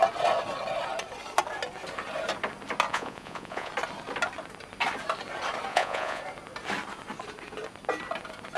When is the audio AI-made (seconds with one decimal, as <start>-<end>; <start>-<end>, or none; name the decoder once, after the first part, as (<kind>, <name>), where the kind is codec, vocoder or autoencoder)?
2.9-3.7 (vocoder, Vocos); 5.7-6.2